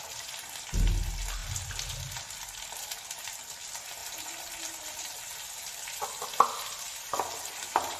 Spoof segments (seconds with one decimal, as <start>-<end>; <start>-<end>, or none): 4.0-5.5